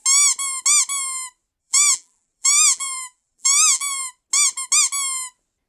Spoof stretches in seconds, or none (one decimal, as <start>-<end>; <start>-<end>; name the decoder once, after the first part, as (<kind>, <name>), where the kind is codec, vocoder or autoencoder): 1.6-4.0 (vocoder, BigVGAN v2)

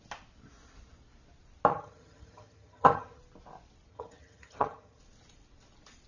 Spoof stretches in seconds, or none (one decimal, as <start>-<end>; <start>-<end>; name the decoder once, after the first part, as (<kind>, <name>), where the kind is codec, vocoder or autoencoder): 1.7-3.2 (vocoder, HiFi-GAN); 3.9-5.0